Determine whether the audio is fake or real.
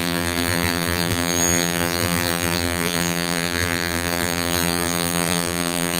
fake